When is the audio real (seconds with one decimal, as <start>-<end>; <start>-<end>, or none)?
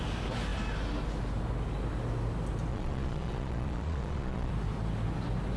0.0-2.7; 4.5-5.6